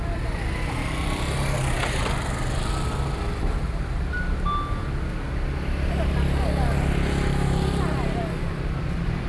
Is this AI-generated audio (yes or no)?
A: no